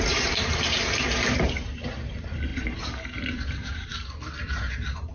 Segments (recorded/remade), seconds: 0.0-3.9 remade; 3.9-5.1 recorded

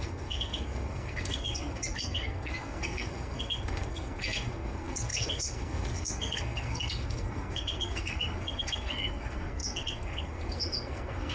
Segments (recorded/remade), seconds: 0.0-11.3 remade

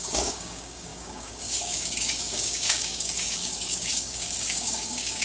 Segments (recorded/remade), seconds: 0.0-5.2 remade

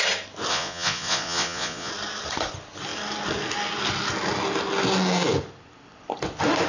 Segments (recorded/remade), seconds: 0.0-0.5 recorded; 0.5-1.9 remade; 1.9-6.7 recorded

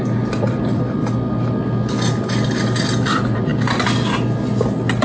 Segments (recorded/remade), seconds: 0.0-1.0 remade; 1.0-2.9 recorded; 2.9-3.5 remade; 3.5-5.0 recorded